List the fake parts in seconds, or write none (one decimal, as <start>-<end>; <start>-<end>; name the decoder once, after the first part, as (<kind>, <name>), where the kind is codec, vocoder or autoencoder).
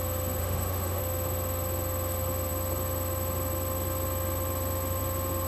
0.4-1.0 (autoencoder, DAC-VAE)